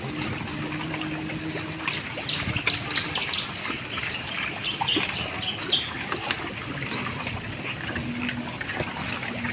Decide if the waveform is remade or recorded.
recorded